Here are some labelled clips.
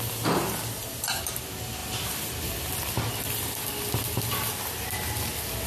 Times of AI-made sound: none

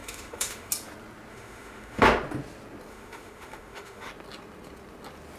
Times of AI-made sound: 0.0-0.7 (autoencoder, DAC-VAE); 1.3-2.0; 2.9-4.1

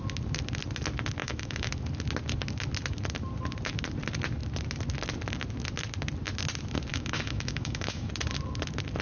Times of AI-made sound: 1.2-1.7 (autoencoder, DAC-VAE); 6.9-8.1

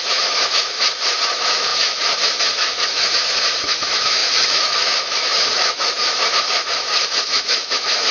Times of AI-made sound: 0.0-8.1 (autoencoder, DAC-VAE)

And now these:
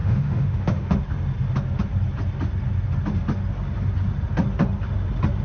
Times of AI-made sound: 0.0-1.0 (autoencoder, DAC-VAE)

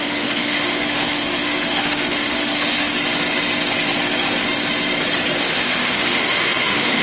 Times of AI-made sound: 0.0-2.9 (autoencoder, DAC-VAE); 5.4-7.0

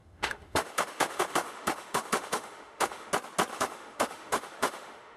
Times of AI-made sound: 0.0-3.1 (autoencoder, DAC-VAE); 3.5-5.2